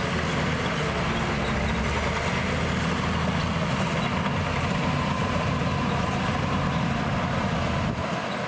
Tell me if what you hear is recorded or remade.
recorded